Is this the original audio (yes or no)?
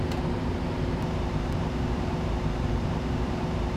no